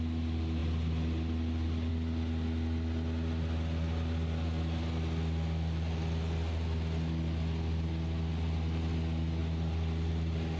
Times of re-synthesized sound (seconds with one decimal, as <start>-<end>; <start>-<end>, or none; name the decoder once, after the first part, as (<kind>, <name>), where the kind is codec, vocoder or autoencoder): none

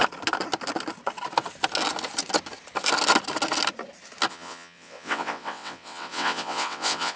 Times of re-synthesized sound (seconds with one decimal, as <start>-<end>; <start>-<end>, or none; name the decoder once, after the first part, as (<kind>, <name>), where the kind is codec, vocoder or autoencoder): 4.3-7.2 (vocoder, WaveNeXt)

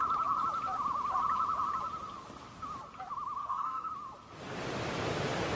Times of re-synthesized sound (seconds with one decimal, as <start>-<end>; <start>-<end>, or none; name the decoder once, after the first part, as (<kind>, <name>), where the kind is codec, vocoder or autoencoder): 3.4-3.9 (codec, SNAC)